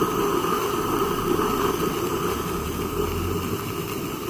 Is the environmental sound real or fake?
real